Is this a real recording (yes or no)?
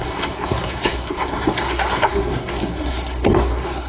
no